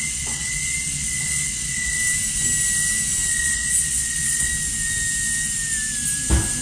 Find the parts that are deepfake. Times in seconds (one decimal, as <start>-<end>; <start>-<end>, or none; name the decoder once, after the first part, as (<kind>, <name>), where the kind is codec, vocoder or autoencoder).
0.0-2.0 (vocoder, Vocos); 3.3-4.5